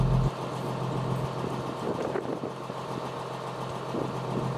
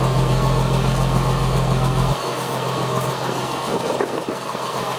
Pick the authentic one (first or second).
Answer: first